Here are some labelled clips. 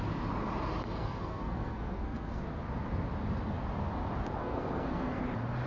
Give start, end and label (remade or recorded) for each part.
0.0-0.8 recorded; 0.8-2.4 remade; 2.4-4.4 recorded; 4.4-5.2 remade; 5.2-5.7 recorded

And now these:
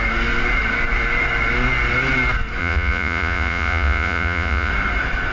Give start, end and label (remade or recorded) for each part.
0.0-2.6 recorded; 2.6-4.7 remade; 4.7-5.3 recorded

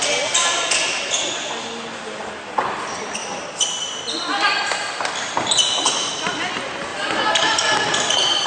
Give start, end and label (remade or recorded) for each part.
0.0-3.2 recorded; 3.2-5.5 remade; 5.5-6.9 recorded; 6.9-8.5 remade